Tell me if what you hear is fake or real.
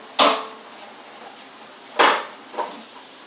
real